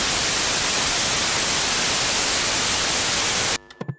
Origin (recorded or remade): recorded